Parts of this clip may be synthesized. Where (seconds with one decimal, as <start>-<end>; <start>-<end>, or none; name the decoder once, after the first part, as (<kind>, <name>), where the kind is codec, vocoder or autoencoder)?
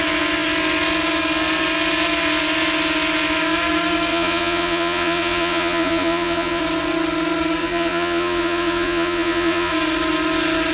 4.1-6.6 (vocoder, Vocos); 7.6-9.7